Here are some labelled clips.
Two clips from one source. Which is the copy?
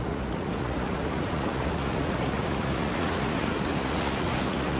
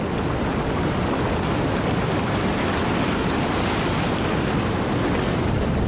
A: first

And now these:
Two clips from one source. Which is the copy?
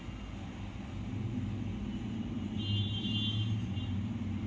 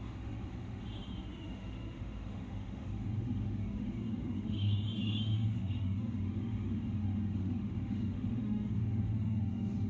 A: second